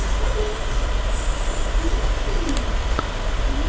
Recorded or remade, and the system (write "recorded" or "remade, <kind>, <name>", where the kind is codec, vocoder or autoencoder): remade, vocoder, BigVGAN v2